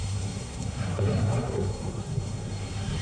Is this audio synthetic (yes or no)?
yes